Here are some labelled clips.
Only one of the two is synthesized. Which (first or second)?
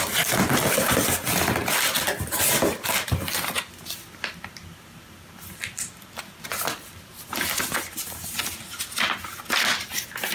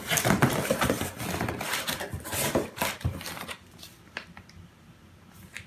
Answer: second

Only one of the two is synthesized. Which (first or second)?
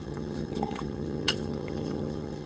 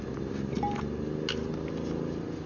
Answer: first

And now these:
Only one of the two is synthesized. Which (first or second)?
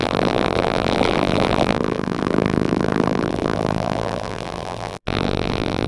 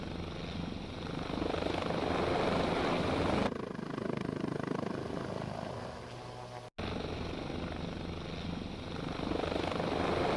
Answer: first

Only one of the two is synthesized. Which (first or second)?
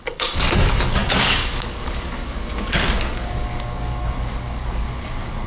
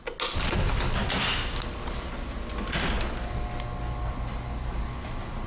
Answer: first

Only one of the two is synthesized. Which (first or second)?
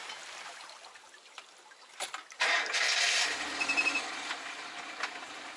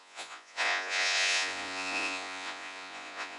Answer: second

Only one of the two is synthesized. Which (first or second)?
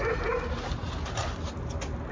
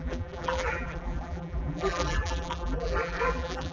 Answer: second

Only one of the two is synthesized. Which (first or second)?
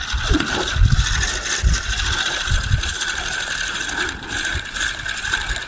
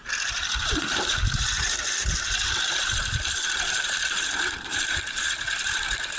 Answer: second